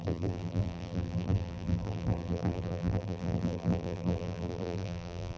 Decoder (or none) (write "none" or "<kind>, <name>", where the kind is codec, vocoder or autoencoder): vocoder, BigVGAN v2